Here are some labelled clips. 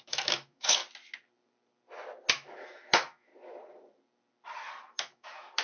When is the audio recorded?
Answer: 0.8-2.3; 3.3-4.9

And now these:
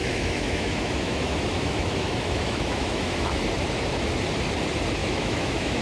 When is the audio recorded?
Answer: 3.4-5.0